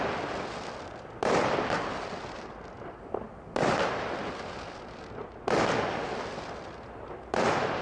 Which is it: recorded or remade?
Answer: recorded